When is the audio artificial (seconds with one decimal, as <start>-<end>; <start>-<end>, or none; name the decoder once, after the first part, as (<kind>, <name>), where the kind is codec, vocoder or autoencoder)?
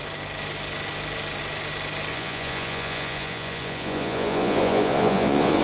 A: 2.1-5.6 (vocoder, Vocos)